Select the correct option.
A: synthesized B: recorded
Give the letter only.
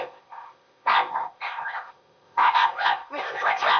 A